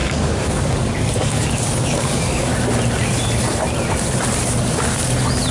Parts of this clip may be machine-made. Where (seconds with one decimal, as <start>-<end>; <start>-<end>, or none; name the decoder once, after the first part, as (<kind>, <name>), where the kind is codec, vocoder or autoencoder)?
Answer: 0.0-2.5 (codec, DAC)